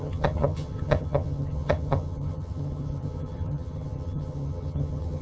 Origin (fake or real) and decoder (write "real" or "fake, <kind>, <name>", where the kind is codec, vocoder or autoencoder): fake, vocoder, HiFi-GAN